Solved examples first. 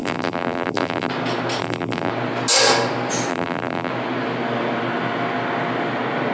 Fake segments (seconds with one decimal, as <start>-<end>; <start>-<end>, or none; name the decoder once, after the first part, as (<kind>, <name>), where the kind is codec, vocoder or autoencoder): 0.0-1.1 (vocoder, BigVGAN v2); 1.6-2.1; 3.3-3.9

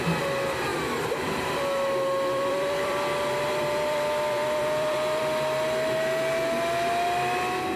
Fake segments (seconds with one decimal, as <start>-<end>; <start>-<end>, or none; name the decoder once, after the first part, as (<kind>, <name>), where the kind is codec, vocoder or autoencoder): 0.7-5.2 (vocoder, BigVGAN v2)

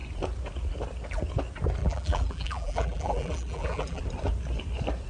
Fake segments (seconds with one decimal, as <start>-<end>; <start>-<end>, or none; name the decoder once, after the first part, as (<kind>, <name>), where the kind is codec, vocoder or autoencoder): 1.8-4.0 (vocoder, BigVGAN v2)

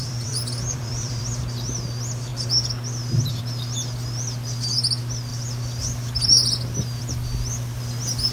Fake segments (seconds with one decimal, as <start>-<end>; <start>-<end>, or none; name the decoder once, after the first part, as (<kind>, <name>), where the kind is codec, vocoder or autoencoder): 0.0-1.4 (vocoder, BigVGAN v2)

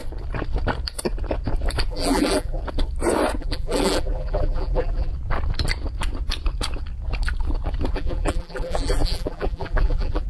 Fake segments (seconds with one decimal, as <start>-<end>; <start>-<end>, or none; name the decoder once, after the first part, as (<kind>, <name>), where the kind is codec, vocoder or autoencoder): 1.9-2.6 (vocoder, BigVGAN v2); 3.4-5.1; 7.9-10.3

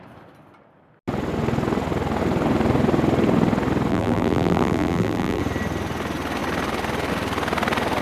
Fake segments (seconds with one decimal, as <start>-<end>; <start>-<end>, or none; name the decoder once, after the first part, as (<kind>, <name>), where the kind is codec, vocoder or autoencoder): 3.9-5.4 (vocoder, BigVGAN v2)

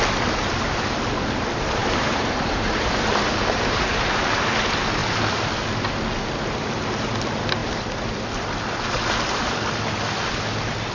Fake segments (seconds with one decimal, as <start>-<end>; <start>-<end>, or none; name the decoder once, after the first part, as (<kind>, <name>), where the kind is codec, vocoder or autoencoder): 1.8-4.4 (vocoder, BigVGAN v2)

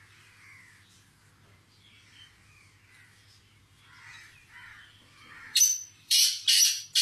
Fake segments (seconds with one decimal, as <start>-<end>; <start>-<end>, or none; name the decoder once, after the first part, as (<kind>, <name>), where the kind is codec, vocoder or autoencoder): 4.1-6.3 (vocoder, BigVGAN v2)